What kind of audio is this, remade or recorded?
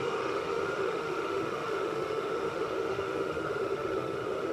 remade